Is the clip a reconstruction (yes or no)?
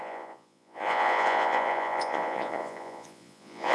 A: yes